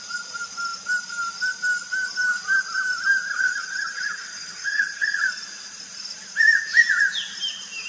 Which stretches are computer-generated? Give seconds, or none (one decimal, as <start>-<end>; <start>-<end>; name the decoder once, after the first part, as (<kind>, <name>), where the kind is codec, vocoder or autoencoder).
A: 3.3-5.2 (vocoder, HiFi-GAN)